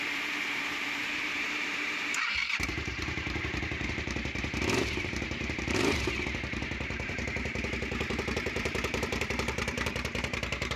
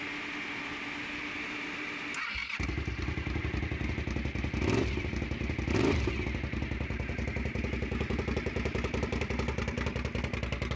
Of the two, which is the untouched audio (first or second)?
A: second